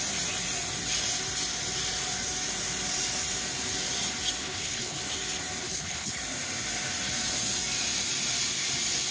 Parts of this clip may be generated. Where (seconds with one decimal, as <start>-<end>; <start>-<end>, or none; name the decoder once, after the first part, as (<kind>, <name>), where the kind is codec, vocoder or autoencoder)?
4.4-5.0 (codec, HILCodec); 5.6-6.2